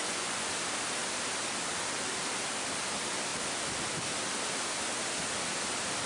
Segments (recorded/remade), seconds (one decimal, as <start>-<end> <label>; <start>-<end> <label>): 0.0-0.5 remade; 0.5-6.1 recorded